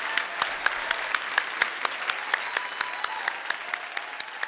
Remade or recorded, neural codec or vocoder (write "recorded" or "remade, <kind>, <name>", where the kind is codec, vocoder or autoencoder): recorded